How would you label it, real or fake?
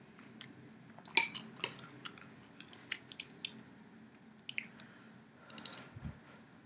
real